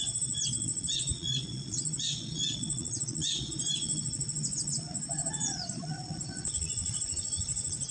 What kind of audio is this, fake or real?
fake